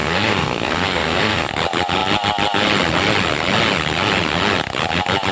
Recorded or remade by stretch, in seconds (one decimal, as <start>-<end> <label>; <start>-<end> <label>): 0.0-1.5 remade; 1.5-5.3 recorded